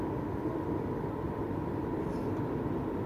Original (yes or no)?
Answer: yes